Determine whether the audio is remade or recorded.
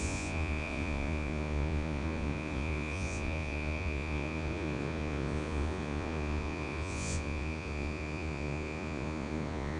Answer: remade